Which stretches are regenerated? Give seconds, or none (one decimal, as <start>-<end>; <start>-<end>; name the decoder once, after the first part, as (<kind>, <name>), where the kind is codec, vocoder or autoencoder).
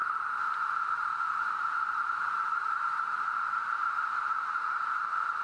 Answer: 0.0-5.4 (vocoder, BigVGAN v2)